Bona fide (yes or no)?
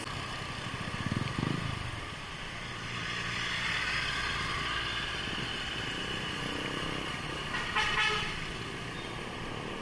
yes